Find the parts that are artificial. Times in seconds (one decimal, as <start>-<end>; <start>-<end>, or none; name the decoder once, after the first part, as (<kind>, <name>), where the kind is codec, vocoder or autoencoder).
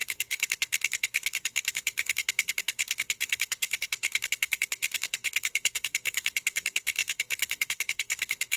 0.0-8.6 (codec, DAC)